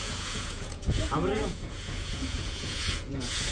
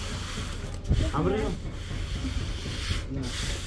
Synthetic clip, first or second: first